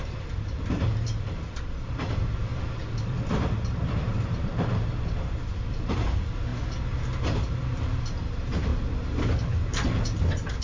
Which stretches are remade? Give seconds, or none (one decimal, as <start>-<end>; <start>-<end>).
0.0-2.5; 4.0-6.5; 7.8-8.7; 9.3-10.6